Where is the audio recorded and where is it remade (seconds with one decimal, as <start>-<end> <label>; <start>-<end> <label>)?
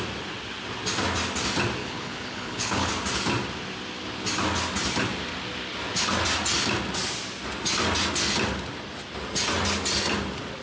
0.0-1.8 recorded; 1.8-2.9 remade; 2.9-10.6 recorded